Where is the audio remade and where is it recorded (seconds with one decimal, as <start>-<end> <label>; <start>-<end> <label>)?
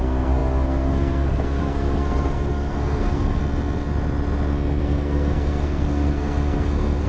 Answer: 0.0-3.4 remade; 3.4-4.8 recorded; 4.8-7.1 remade